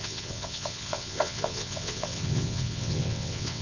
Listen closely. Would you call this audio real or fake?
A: fake